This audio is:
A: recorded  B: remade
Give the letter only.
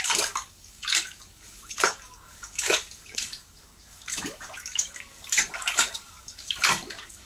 B